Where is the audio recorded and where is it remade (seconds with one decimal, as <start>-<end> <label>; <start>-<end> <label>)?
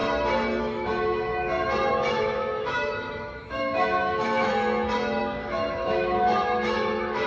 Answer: 0.0-0.6 recorded; 0.6-1.3 remade; 1.3-1.9 recorded; 1.9-4.5 remade; 4.5-5.2 recorded; 5.2-7.3 remade